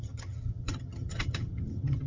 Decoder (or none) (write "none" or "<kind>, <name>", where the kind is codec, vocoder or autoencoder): vocoder, HiFi-GAN